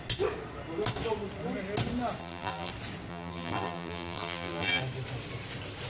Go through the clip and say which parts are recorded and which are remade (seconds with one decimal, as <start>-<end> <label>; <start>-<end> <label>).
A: 0.0-2.2 recorded; 2.2-2.7 remade; 2.7-3.1 recorded; 3.1-4.8 remade; 4.8-5.9 recorded